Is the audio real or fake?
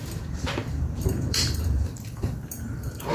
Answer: fake